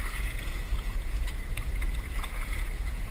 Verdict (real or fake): fake